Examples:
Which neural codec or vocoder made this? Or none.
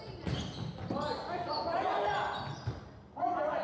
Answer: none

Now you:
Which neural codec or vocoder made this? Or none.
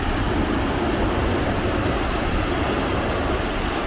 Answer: none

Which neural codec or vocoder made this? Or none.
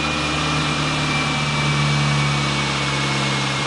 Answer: none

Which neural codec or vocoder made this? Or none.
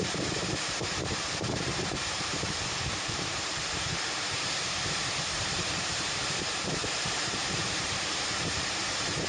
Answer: vocoder, BigVGAN v2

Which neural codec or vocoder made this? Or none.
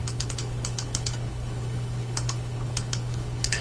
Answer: codec, HILCodec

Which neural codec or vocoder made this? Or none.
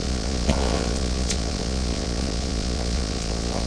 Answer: vocoder, Vocos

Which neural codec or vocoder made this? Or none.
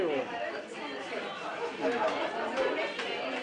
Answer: none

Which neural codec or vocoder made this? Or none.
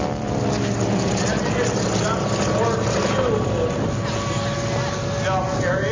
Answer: none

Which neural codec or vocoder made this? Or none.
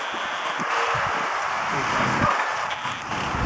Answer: none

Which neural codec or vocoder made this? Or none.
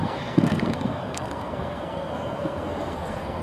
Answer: codec, SNAC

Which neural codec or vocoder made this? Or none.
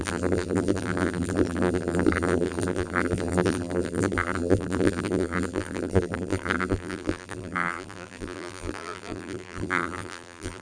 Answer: vocoder, BigVGAN v2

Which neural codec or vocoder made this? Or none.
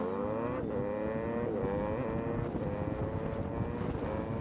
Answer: none